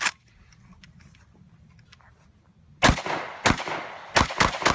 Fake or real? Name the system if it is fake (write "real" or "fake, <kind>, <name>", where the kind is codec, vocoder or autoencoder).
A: real